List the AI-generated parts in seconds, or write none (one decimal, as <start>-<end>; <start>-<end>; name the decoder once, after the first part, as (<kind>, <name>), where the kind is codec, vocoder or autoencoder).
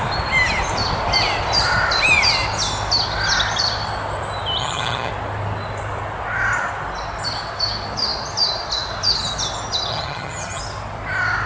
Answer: 4.6-5.1 (vocoder, HiFi-GAN); 9.9-10.6